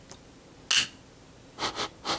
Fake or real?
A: real